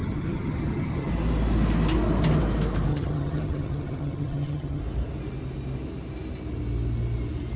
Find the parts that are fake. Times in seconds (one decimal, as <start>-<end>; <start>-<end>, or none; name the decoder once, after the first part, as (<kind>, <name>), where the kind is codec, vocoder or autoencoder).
0.0-1.1 (vocoder, HiFi-GAN); 2.9-4.8